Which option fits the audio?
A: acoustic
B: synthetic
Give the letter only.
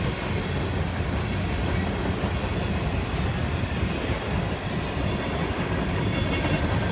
A